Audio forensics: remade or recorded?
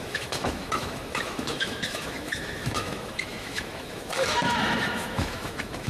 remade